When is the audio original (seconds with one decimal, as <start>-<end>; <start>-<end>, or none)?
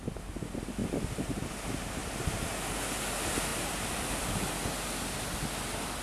0.0-0.8; 1.4-2.0; 2.5-6.0